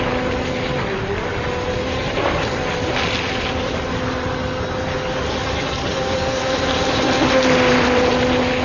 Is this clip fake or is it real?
real